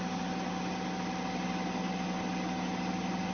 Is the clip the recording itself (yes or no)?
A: yes